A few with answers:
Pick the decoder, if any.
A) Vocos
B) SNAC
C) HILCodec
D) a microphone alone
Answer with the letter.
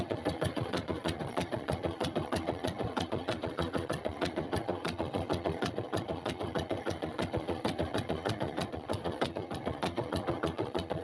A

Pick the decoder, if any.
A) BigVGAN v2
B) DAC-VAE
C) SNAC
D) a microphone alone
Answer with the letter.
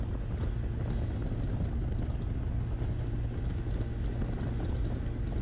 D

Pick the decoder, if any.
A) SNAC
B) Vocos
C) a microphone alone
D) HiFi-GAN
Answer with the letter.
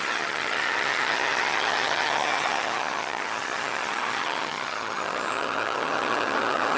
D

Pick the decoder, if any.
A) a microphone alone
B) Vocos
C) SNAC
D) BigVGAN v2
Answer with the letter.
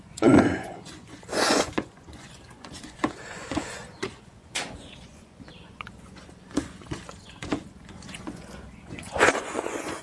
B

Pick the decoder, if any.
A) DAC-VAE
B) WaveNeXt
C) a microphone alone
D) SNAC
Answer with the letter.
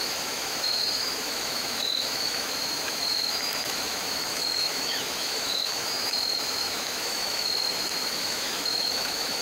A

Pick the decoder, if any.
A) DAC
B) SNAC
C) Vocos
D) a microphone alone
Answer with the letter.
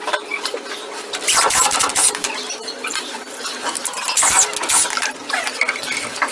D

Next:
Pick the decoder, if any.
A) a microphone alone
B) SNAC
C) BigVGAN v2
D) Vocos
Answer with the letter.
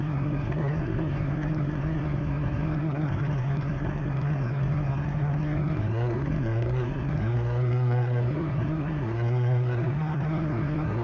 B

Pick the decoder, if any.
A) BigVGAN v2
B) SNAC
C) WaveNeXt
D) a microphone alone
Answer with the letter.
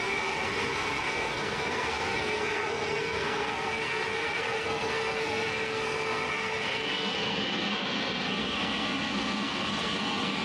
B